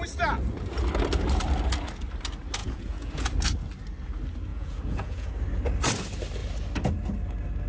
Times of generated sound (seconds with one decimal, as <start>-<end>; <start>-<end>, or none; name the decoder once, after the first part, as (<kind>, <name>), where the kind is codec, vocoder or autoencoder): 2.6-3.3 (vocoder, Vocos); 4.5-5.3